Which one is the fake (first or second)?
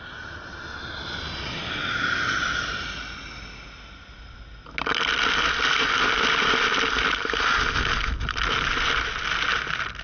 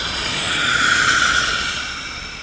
second